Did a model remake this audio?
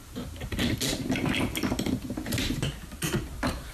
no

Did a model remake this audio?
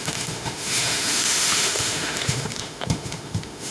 yes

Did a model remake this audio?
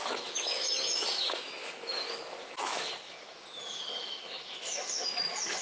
yes